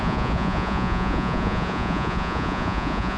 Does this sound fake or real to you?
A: fake